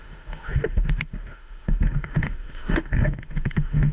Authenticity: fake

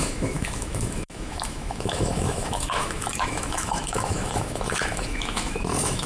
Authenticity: fake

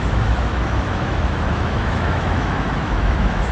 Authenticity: fake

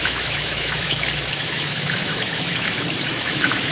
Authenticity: fake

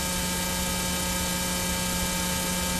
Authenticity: real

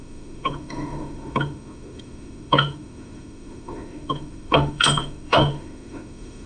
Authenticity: fake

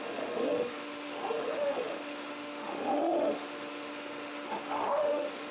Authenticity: fake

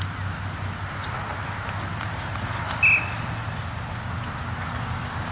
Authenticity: real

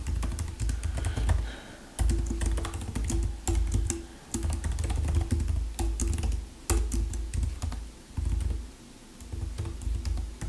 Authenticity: real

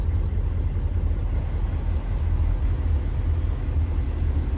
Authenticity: real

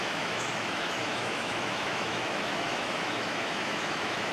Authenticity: fake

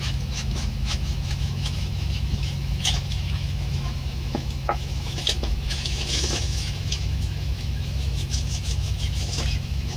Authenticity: fake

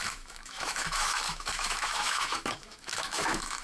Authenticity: fake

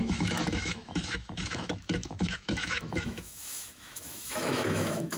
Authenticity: fake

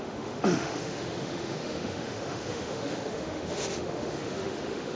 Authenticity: fake